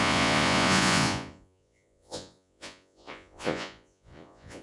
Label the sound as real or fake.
fake